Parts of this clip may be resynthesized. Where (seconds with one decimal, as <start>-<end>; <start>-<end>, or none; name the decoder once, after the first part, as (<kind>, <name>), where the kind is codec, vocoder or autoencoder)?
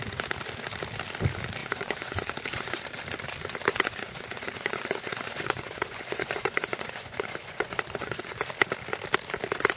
1.6-2.8 (vocoder, Vocos); 3.7-8.4